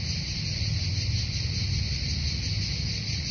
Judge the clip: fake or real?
real